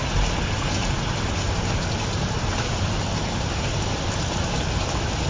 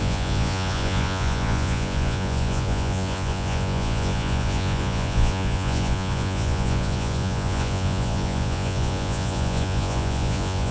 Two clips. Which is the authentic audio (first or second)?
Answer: first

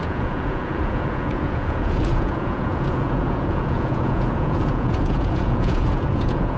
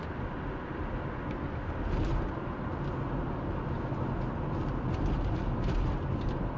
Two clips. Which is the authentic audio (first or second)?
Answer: second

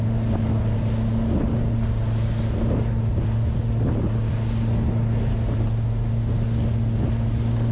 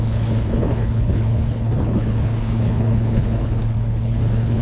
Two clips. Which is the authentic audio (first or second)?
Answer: first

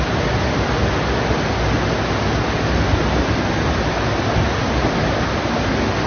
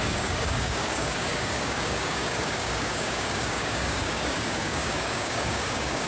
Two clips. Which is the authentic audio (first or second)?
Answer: first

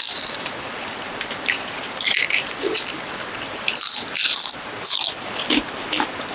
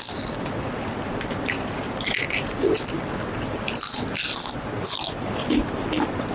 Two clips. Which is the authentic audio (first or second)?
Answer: second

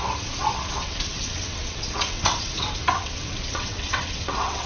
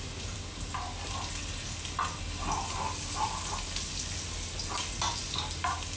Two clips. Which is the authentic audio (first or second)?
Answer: second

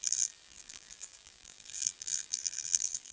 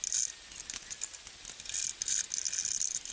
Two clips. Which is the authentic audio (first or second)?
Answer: second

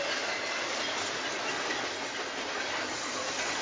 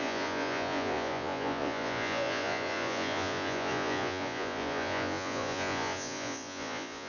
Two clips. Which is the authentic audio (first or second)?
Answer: first